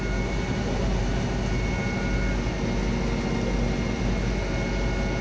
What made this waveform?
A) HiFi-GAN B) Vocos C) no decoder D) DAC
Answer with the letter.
C